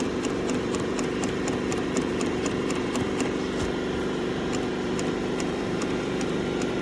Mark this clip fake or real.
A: fake